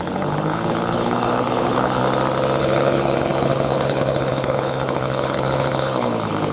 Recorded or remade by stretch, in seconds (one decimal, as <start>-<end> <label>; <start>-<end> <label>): 0.0-2.0 remade; 2.0-2.6 recorded; 2.6-6.5 remade